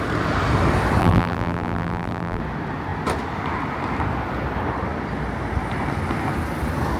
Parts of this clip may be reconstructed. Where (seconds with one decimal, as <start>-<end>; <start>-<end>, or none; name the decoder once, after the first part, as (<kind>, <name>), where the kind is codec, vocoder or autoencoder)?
1.0-2.4 (vocoder, BigVGAN v2)

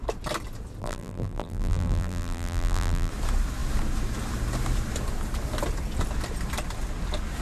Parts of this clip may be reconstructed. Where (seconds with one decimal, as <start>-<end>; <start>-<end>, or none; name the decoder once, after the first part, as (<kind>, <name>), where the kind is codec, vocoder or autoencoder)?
0.8-3.1 (vocoder, BigVGAN v2)

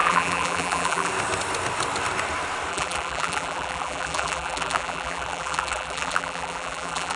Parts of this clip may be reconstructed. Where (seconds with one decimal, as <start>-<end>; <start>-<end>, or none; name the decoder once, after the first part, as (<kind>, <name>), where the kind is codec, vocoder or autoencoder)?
0.0-1.1 (vocoder, BigVGAN v2); 2.7-7.2

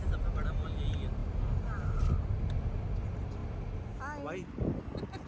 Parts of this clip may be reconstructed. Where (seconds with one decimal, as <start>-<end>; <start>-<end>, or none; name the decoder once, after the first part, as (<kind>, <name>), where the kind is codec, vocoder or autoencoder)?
none

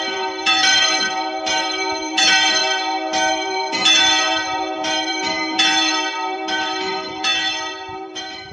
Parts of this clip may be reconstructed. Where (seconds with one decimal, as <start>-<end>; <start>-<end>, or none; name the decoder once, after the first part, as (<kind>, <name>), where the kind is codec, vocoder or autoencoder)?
0.0-2.6 (vocoder, BigVGAN v2); 3.3-8.5

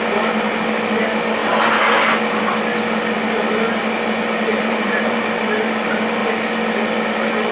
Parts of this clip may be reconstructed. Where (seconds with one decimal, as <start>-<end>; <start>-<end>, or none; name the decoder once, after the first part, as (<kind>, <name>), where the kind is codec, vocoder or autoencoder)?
4.5-5.2 (vocoder, BigVGAN v2)

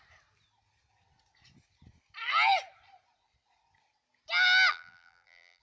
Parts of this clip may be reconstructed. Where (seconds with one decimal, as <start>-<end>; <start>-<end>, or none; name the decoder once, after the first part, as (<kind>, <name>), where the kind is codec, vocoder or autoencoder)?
4.7-5.6 (vocoder, BigVGAN v2)